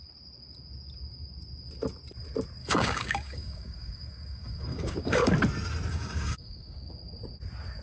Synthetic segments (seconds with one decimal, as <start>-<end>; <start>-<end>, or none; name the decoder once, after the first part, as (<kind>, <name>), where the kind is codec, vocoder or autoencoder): 2.6-5.3 (codec, DAC); 5.9-6.9